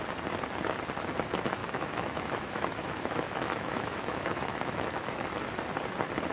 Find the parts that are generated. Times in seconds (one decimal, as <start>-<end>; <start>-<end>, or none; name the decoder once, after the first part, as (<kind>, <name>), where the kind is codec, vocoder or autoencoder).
1.6-5.4 (autoencoder, DAC-VAE)